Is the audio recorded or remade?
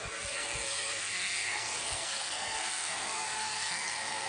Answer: remade